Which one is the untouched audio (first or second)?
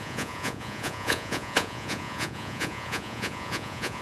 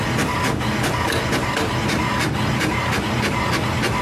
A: second